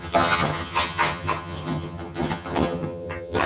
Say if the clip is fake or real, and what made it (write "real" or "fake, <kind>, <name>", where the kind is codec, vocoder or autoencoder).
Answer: fake, vocoder, HiFi-GAN